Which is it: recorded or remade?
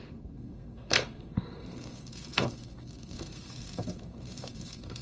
remade